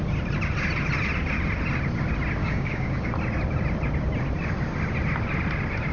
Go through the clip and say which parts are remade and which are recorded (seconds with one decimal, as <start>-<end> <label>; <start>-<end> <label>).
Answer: 0.0-2.4 recorded; 2.4-3.1 remade; 3.1-5.9 recorded